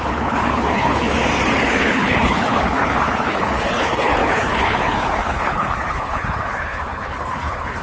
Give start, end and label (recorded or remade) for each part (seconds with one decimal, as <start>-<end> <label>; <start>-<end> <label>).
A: 0.0-1.1 remade; 1.1-1.7 recorded; 1.7-7.8 remade